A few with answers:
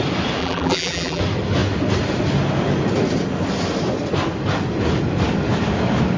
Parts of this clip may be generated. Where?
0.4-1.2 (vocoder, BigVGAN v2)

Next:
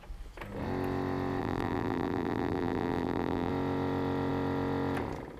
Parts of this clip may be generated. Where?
1.4-3.5 (vocoder, BigVGAN v2)